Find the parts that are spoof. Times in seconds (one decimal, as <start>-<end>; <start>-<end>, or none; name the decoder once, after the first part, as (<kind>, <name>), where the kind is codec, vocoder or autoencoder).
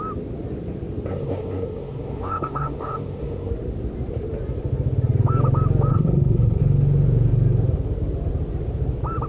1.1-3.5 (codec, SNAC); 5.9-6.6